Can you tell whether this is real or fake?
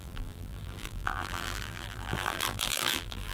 fake